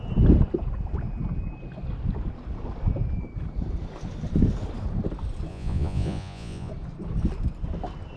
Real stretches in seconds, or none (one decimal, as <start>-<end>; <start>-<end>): 0.0-5.5; 6.7-8.2